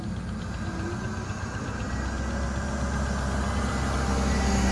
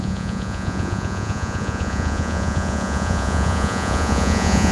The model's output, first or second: second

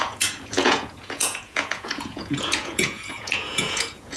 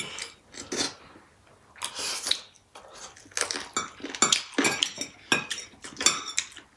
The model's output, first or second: first